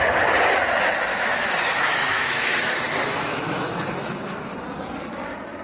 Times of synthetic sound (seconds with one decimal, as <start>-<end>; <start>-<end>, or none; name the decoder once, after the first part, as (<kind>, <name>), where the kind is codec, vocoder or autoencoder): 1.1-4.5 (autoencoder, DAC-VAE)